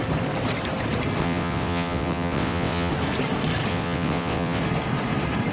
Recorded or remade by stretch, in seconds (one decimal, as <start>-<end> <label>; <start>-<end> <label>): 0.0-1.2 recorded; 1.2-2.9 remade; 2.9-3.7 recorded; 3.7-4.6 remade; 4.6-5.5 recorded